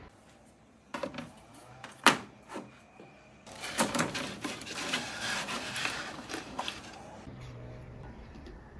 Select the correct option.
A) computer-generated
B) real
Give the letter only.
A